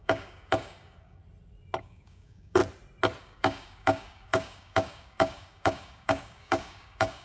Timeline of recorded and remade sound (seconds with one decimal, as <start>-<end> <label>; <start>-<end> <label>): 0.0-1.2 remade; 1.2-1.8 recorded; 1.8-2.6 remade; 2.6-3.2 recorded; 3.2-7.2 remade